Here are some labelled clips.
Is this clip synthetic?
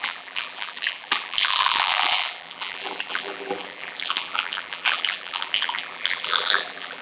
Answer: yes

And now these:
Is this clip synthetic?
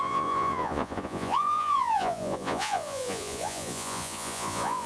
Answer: yes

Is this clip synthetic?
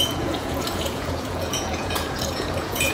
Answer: yes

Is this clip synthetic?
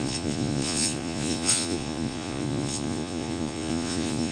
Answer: yes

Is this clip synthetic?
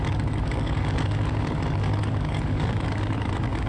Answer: yes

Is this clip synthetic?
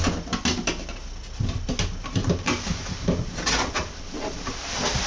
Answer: no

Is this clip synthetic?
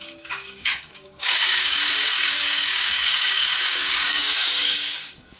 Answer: yes